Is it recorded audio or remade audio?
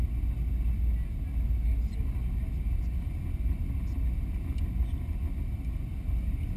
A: recorded